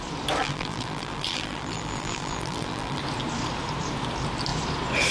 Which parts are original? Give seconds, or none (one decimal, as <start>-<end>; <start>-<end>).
0.0-0.4; 3.0-5.1